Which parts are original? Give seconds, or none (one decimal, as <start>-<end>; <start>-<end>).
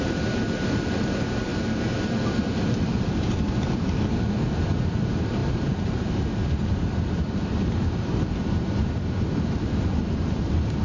none